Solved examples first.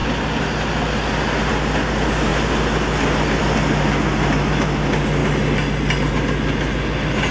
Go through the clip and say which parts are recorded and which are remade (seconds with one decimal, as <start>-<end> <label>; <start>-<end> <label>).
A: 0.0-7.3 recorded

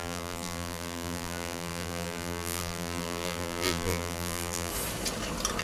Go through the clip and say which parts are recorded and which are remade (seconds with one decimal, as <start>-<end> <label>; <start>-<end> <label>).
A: 0.0-4.7 remade; 4.7-5.6 recorded

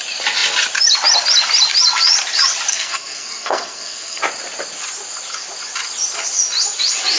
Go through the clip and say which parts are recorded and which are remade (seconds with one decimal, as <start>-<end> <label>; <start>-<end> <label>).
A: 0.0-2.7 recorded; 2.7-4.2 remade; 4.2-7.2 recorded